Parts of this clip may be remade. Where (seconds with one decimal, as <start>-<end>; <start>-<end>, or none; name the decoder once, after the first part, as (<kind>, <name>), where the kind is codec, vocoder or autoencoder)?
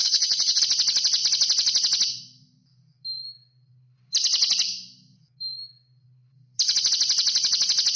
0.0-0.6 (codec, SNAC)